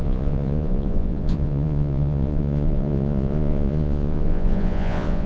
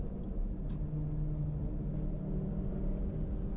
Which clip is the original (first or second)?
second